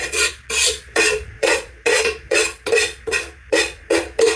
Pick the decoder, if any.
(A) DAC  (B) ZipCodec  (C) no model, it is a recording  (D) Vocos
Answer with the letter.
D